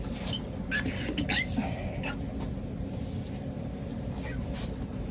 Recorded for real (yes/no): yes